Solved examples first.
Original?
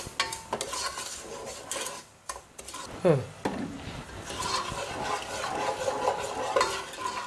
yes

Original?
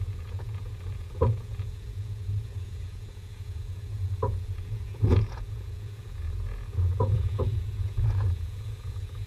no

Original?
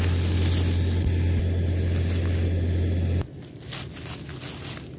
yes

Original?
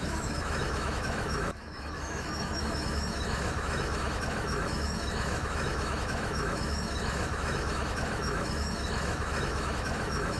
no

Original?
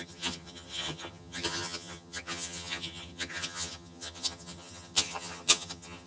no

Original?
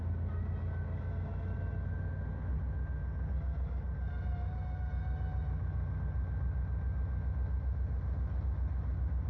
yes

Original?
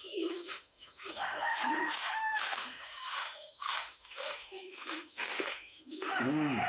no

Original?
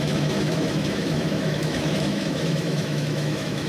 no